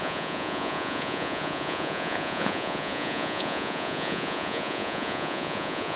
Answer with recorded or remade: remade